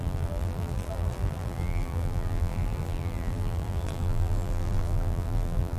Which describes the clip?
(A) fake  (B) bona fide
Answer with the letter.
A